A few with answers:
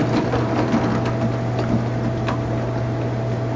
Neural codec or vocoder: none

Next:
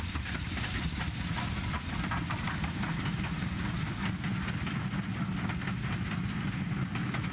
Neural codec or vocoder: none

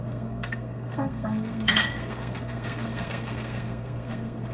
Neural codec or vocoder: codec, SNAC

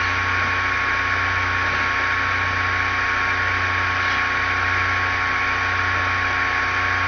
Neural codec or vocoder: none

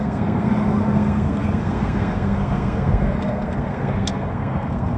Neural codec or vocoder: codec, SNAC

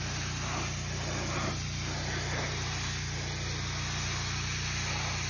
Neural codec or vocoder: none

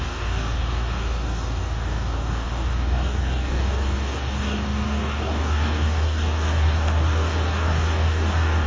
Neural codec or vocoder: codec, DAC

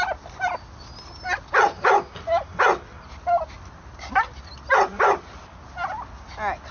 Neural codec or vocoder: none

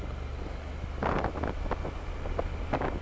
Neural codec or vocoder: none